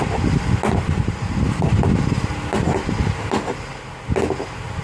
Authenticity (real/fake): real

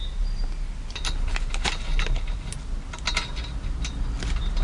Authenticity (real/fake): real